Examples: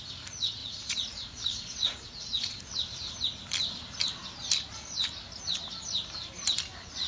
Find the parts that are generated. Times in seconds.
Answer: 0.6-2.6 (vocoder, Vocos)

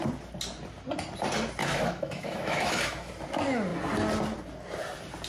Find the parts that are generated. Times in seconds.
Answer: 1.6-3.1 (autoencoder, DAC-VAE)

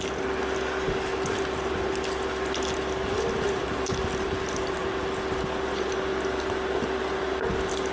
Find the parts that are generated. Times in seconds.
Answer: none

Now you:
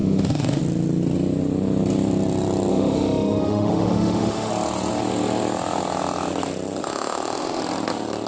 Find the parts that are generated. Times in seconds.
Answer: 0.0-0.6 (autoencoder, DAC-VAE); 2.7-4.5; 6.8-7.6

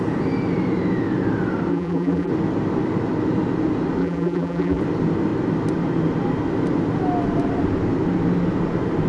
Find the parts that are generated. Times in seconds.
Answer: 1.7-2.3 (vocoder, BigVGAN v2); 4.0-4.8